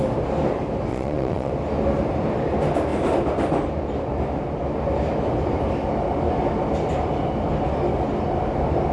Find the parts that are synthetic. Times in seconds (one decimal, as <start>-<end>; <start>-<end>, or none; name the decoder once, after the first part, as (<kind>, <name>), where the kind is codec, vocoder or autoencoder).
0.9-1.5 (vocoder, Vocos)

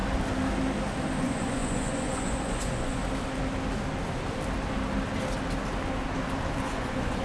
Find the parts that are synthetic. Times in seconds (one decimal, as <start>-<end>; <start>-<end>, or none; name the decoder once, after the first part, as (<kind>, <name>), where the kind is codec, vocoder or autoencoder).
1.2-3.0 (vocoder, Vocos); 6.6-7.2

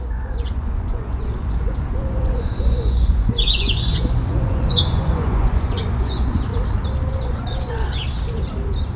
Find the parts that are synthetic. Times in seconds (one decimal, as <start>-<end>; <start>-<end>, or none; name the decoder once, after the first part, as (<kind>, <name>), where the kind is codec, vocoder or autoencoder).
0.0-6.5 (vocoder, Vocos); 7.1-8.0

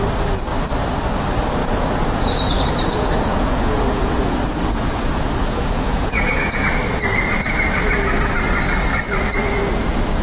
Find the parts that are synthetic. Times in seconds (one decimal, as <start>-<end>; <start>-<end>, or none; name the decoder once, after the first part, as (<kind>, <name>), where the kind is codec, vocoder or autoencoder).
1.6-6.7 (vocoder, Vocos)

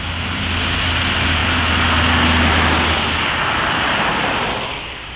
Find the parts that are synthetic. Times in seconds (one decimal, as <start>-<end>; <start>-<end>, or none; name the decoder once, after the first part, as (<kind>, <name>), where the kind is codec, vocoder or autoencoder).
none